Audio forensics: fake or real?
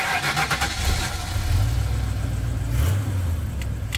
real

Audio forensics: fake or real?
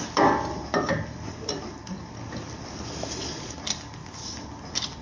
real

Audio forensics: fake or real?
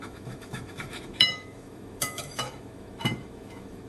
fake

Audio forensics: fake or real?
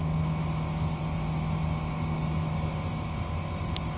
real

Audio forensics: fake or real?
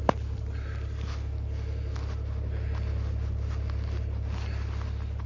real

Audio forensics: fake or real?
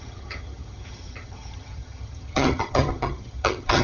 fake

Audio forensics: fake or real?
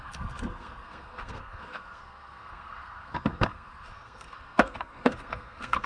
fake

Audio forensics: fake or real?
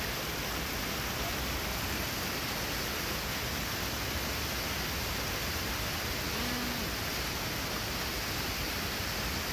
real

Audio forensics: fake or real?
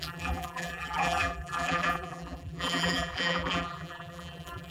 fake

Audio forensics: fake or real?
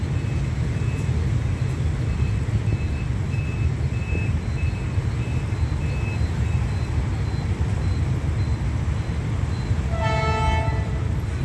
real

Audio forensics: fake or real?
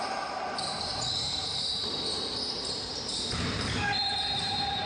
fake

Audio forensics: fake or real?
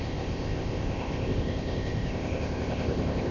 fake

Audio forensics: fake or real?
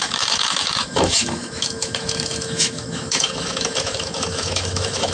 fake